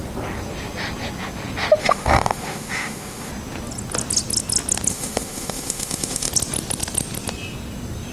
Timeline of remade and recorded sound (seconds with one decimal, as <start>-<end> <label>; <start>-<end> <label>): 0.0-1.8 recorded; 1.8-3.3 remade; 3.3-4.9 recorded; 4.9-6.3 remade; 6.3-8.1 recorded